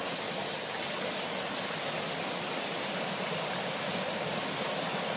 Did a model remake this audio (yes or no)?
no